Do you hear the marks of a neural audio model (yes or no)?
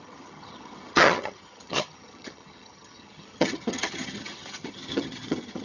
yes